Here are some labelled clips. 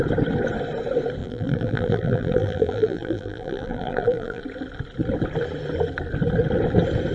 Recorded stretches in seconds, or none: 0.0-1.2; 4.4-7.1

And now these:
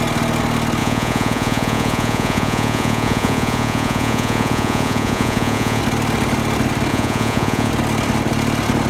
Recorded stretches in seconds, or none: 0.0-0.8; 5.8-6.9; 7.7-8.9

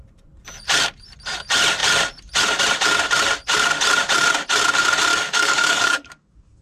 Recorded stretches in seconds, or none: 0.0-5.1

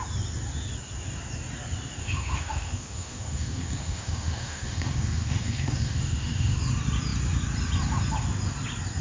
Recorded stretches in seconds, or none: 0.0-2.0; 6.6-9.0

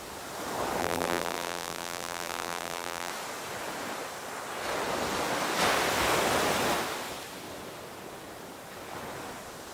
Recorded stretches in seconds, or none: 0.0-0.8; 3.1-9.7